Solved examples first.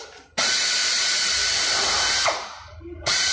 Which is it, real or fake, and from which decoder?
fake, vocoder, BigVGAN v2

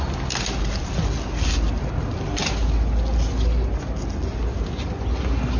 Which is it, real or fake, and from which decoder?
real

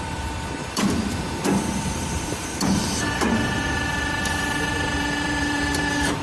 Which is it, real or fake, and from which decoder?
fake, vocoder, BigVGAN v2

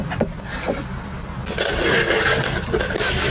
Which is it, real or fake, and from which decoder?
real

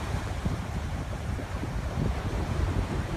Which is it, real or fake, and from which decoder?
fake, vocoder, BigVGAN v2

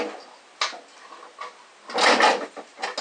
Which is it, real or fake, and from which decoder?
real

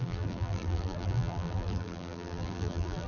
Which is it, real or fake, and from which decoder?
fake, vocoder, BigVGAN v2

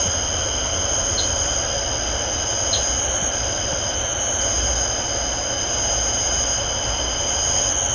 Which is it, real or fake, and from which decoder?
real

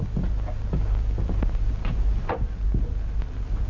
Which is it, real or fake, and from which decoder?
fake, vocoder, BigVGAN v2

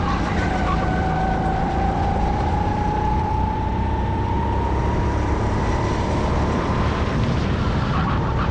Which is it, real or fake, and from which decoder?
fake, vocoder, BigVGAN v2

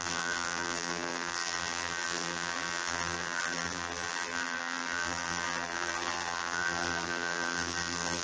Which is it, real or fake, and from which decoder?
fake, vocoder, BigVGAN v2